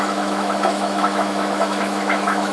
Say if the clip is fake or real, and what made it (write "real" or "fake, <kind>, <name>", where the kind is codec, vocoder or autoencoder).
fake, autoencoder, DAC-VAE